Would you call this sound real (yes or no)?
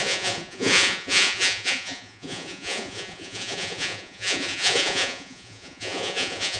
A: no